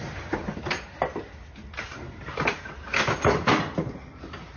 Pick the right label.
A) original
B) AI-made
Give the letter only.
A